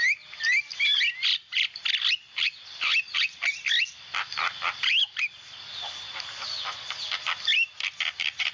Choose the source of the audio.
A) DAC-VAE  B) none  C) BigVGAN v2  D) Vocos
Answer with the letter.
B